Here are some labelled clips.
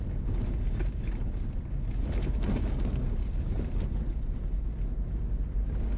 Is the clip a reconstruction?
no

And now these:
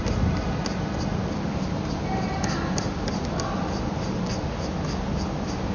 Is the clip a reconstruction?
no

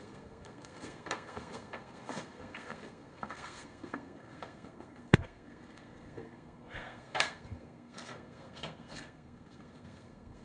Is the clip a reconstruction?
yes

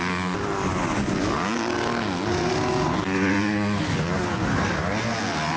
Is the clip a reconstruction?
no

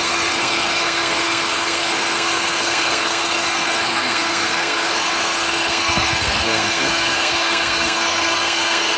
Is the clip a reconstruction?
yes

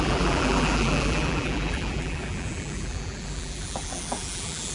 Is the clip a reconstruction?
yes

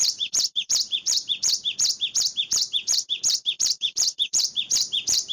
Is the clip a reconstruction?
yes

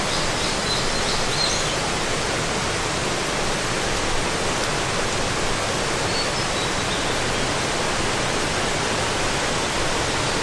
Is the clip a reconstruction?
no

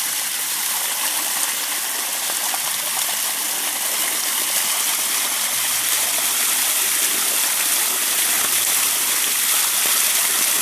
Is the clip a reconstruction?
no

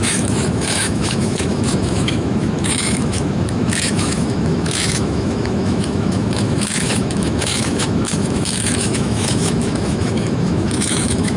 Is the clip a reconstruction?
yes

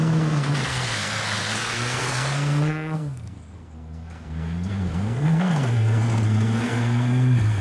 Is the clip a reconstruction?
yes